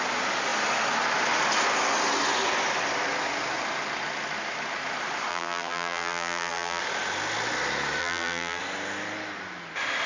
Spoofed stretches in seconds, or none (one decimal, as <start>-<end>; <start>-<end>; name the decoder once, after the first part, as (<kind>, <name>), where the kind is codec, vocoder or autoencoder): 5.3-6.8 (vocoder, BigVGAN v2); 8.0-8.6